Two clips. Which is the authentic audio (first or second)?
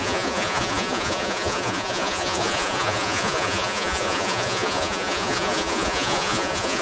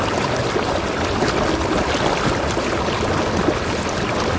second